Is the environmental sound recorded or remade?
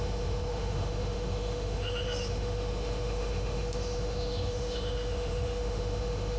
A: remade